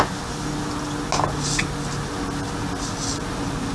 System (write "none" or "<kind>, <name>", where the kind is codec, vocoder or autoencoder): none